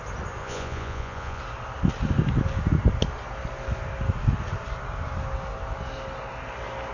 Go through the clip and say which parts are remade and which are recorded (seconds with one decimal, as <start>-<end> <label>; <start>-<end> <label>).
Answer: 0.0-0.4 recorded; 0.4-1.4 remade; 1.4-6.9 recorded